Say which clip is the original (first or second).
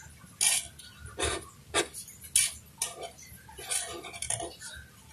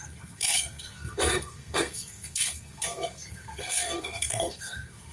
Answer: first